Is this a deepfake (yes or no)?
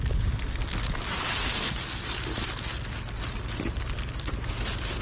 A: no